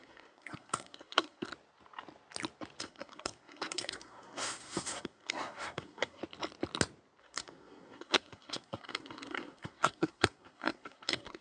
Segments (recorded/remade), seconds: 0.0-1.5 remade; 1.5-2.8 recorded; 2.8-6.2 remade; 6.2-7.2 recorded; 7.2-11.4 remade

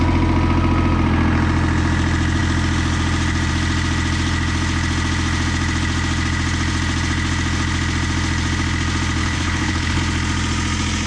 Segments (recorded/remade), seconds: 0.0-9.2 recorded; 9.2-10.0 remade; 10.0-11.1 recorded

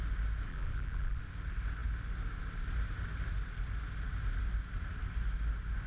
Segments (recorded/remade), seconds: 0.0-0.5 recorded; 0.5-1.2 remade; 1.2-5.9 recorded